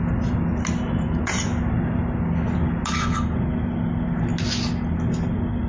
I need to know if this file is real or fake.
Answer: real